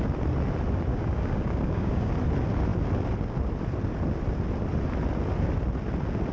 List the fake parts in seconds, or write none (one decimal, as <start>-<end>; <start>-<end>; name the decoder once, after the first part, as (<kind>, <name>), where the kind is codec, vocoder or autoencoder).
0.9-2.1 (codec, DAC)